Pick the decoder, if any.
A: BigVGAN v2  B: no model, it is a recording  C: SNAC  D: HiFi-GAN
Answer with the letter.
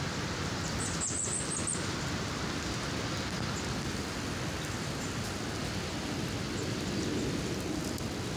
B